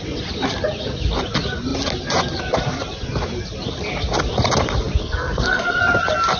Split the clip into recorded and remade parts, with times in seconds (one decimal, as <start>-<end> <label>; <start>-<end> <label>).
0.0-5.0 recorded; 5.0-5.8 remade; 5.8-6.4 recorded